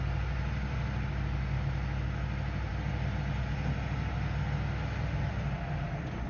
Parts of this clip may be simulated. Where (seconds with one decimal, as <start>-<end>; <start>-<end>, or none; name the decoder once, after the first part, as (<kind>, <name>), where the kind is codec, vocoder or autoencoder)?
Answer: none